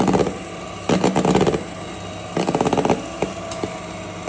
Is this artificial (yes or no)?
no